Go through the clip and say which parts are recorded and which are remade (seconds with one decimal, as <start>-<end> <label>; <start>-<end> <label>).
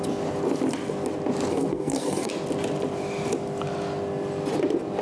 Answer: 0.0-1.5 recorded; 1.5-2.3 remade; 2.3-5.0 recorded